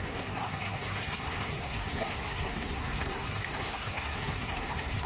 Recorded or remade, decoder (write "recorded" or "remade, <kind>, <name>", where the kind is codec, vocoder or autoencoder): remade, codec, SNAC